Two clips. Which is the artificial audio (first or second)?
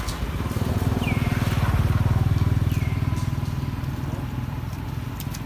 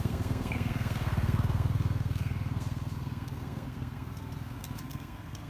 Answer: second